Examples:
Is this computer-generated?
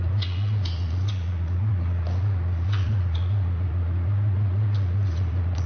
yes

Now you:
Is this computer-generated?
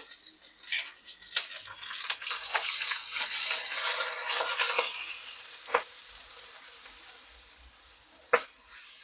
no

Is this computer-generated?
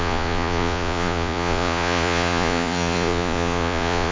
yes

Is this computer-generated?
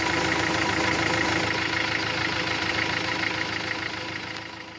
no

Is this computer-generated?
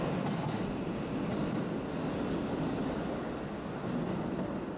no